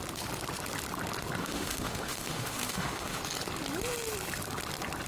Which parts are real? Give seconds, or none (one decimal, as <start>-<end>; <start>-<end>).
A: 0.0-1.4; 3.2-5.1